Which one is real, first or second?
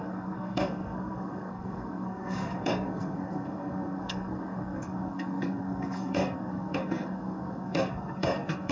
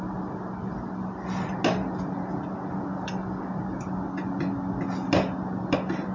second